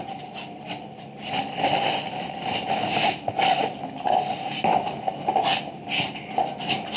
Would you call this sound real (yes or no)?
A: yes